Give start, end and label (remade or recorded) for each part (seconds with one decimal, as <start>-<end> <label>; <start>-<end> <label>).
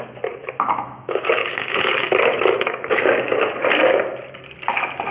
0.0-0.4 recorded; 0.4-3.5 remade; 3.5-5.1 recorded